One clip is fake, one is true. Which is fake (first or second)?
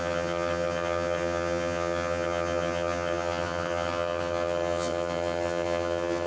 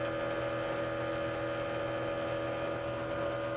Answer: first